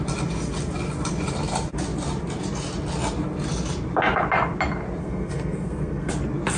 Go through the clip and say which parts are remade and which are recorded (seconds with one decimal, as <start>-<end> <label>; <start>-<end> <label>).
0.0-5.0 recorded; 5.0-6.1 remade; 6.1-6.6 recorded